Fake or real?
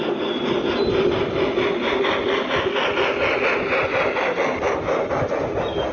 real